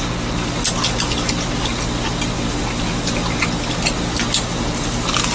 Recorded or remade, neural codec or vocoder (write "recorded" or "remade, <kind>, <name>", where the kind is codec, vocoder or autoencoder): recorded